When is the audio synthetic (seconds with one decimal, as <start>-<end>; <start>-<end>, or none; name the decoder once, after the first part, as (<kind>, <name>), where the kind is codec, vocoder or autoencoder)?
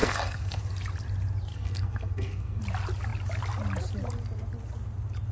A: 0.0-0.6 (codec, SNAC); 1.5-2.6